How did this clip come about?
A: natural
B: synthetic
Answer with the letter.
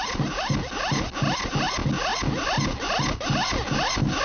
A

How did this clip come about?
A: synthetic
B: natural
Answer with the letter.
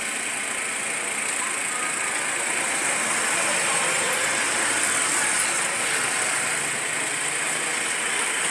B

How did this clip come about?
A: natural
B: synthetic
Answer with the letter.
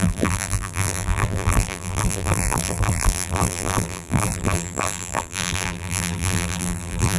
B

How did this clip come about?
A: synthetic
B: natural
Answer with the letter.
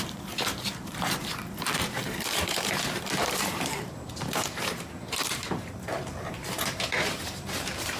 A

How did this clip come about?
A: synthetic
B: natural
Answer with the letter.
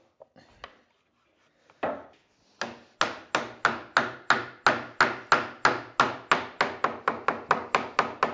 B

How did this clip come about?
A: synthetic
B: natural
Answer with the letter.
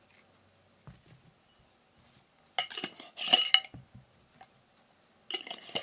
B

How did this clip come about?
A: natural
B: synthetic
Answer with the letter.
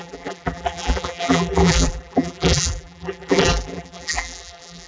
B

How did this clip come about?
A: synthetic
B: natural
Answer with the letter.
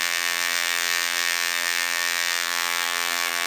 A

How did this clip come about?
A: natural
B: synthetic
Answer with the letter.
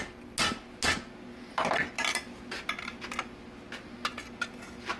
A